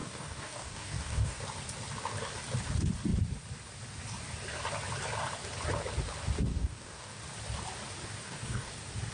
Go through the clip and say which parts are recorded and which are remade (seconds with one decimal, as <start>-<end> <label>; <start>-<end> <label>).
0.0-1.4 remade; 1.4-6.5 recorded; 6.5-7.2 remade; 7.2-8.2 recorded; 8.2-8.7 remade; 8.7-9.1 recorded